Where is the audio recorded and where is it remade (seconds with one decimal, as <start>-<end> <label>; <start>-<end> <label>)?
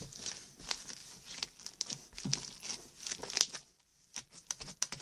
0.0-1.0 recorded; 1.0-1.5 remade; 1.5-3.9 recorded; 3.9-5.0 remade